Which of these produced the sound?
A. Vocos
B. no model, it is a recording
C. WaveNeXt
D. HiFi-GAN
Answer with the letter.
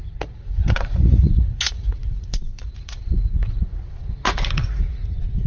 A